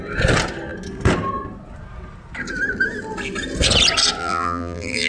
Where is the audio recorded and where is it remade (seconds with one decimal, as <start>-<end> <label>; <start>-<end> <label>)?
0.0-4.2 recorded; 4.2-5.1 remade